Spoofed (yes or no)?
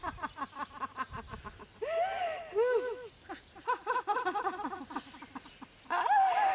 no